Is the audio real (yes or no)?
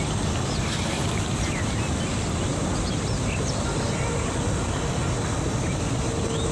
yes